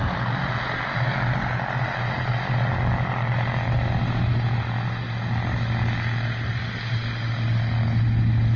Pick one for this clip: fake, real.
real